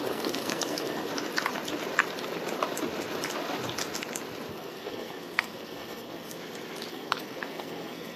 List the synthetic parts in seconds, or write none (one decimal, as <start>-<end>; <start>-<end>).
0.0-1.1; 4.5-6.4; 6.9-8.2